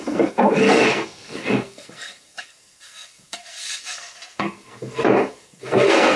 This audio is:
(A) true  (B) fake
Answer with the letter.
B